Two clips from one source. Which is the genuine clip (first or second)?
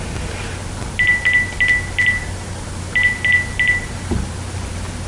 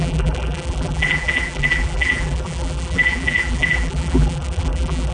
first